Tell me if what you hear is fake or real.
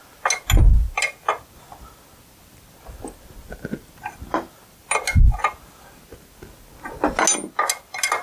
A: real